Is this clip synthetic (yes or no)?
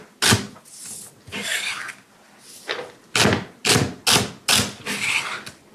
no